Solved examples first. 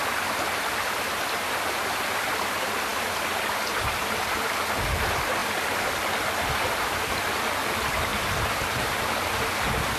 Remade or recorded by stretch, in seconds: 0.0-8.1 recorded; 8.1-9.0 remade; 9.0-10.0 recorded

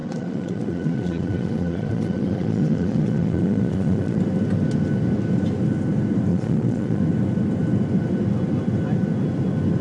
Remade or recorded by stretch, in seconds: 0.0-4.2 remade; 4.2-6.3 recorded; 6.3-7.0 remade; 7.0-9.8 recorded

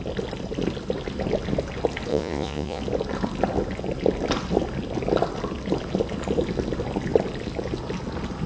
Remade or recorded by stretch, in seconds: 0.0-2.1 recorded; 2.1-2.8 remade; 2.8-8.5 recorded

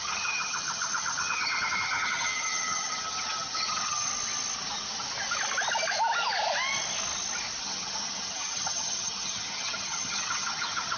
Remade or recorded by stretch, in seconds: 0.0-4.1 remade; 4.1-7.6 recorded; 7.6-11.0 remade

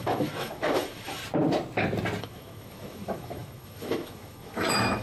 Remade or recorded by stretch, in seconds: 0.0-1.2 remade; 1.2-2.2 recorded; 2.2-5.0 remade

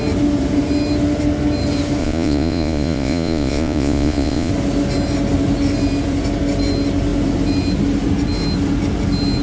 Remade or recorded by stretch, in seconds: 0.0-2.0 recorded; 2.0-4.5 remade; 4.5-9.4 recorded

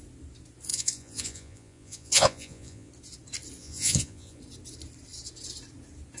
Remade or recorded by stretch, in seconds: 0.0-0.7 recorded; 0.7-2.9 remade; 2.9-3.6 recorded; 3.6-4.4 remade; 4.4-6.2 recorded